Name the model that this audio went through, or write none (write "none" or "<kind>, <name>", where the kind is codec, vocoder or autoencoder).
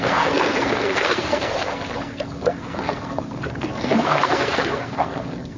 codec, SNAC